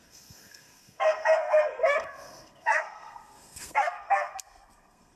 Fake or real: fake